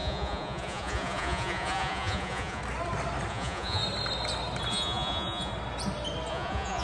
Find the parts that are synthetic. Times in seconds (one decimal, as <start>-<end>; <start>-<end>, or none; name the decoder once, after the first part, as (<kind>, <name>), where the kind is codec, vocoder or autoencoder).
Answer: 0.0-2.6 (vocoder, Vocos); 3.3-3.8; 4.7-5.5; 6.3-6.8